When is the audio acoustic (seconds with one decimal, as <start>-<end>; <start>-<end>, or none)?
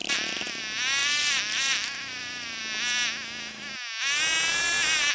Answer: 0.6-1.0; 2.6-5.1